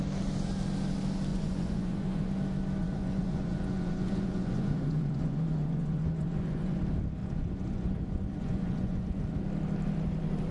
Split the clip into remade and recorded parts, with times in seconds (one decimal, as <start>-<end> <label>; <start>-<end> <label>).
0.0-1.3 recorded; 1.3-2.3 remade; 2.3-2.8 recorded; 2.8-6.8 remade; 6.8-7.2 recorded; 7.2-9.2 remade; 9.2-10.5 recorded